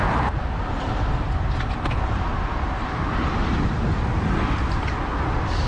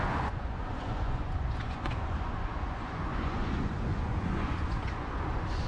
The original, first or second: first